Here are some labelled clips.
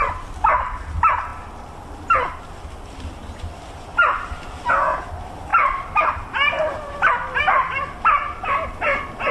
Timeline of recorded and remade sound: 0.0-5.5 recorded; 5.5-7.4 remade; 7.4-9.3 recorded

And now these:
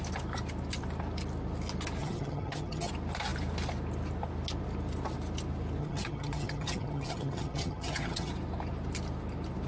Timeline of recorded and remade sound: 0.0-2.0 recorded; 2.0-2.9 remade; 2.9-5.8 recorded; 5.8-8.3 remade; 8.3-9.7 recorded

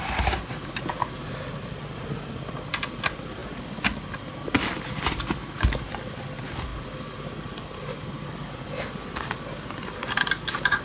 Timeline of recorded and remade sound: 0.0-10.8 recorded

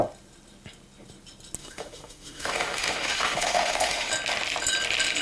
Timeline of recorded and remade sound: 0.0-1.6 recorded; 1.6-4.1 remade; 4.1-5.2 recorded